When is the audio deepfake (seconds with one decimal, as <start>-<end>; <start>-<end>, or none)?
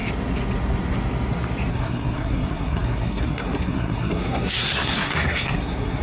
1.7-6.0